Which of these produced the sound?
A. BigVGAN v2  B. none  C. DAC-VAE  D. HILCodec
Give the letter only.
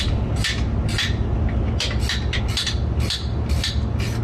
B